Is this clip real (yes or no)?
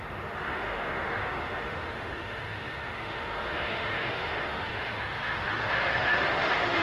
no